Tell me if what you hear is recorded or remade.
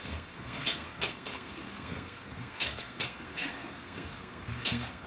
remade